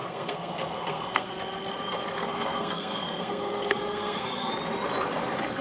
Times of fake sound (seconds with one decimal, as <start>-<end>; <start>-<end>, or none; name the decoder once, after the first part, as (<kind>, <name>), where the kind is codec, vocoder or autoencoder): 0.0-1.3 (codec, SNAC); 2.2-4.5